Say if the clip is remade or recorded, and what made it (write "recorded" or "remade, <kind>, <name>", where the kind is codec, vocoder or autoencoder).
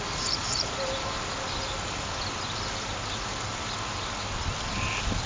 recorded